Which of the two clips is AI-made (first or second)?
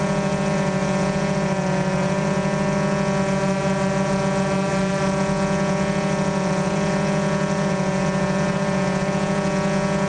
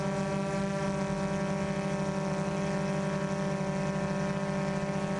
first